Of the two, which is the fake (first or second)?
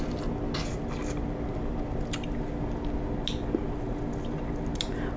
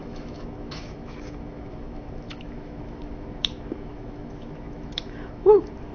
second